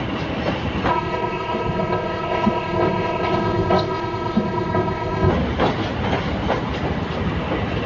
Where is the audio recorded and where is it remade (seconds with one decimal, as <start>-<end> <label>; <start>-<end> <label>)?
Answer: 0.0-0.9 recorded; 0.9-5.3 remade; 5.3-7.9 recorded